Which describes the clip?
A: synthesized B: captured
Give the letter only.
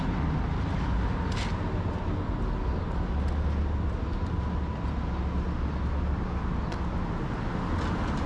B